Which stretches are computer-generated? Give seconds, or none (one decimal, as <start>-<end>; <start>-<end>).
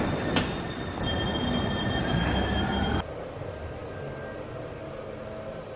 none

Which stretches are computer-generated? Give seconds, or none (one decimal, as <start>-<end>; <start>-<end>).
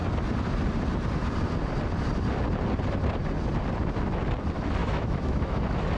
4.8-5.6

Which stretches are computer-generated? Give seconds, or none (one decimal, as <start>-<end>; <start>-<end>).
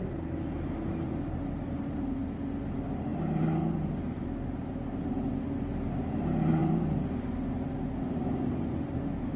none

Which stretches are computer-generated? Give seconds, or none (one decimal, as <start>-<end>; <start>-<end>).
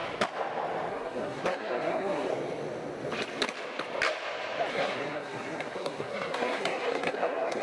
0.9-2.3; 4.7-7.6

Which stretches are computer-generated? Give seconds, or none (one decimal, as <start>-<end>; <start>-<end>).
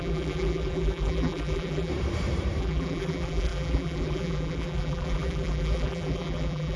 0.0-1.9; 2.6-6.8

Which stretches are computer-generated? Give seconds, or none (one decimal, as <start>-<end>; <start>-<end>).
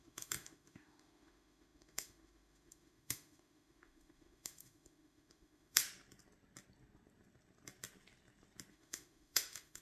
0.0-5.8; 8.7-9.8